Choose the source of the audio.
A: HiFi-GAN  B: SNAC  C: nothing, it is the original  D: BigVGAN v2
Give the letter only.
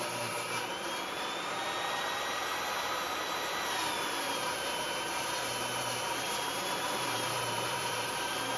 D